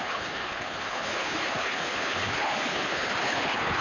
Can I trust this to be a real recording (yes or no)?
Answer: no